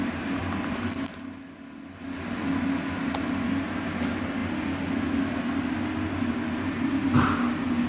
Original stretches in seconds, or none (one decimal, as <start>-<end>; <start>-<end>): 0.0-7.9